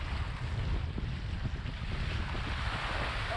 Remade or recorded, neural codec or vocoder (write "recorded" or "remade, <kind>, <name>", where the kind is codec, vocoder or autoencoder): recorded